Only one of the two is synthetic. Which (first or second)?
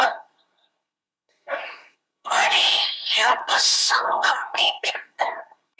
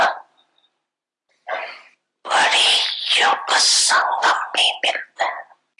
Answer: first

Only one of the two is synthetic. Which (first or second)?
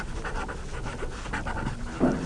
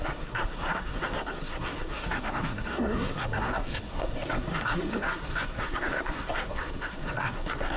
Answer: second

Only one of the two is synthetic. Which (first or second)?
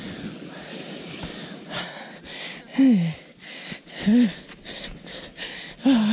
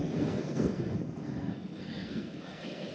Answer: second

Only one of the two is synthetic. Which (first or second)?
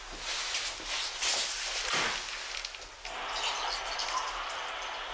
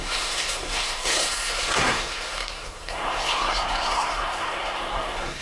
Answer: second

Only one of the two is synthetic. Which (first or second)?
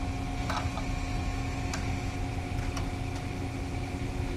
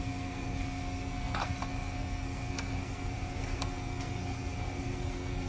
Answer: second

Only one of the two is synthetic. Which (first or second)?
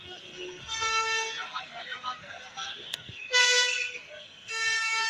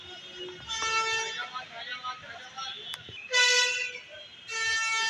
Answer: first